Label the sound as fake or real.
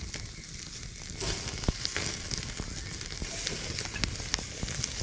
real